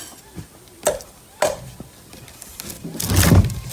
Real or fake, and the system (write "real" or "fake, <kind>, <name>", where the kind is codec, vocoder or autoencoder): real